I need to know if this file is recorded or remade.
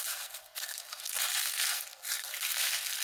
remade